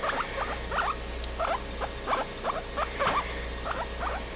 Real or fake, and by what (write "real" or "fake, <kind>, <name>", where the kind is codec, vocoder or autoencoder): real